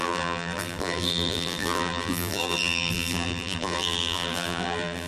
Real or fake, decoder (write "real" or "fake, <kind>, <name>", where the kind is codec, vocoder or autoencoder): fake, vocoder, BigVGAN v2